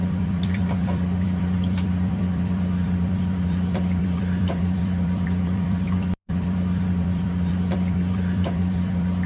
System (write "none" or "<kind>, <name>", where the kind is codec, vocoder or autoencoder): vocoder, BigVGAN v2